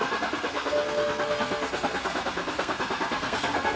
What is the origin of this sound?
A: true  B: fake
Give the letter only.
B